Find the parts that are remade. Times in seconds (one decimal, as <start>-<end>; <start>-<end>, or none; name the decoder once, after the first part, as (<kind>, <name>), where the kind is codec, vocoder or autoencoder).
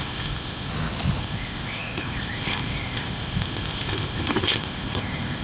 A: 0.0-0.7 (codec, ZipCodec); 1.2-5.4